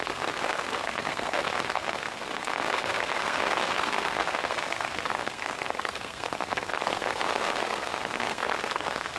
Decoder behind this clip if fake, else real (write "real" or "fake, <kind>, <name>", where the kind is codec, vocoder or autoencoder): fake, codec, SNAC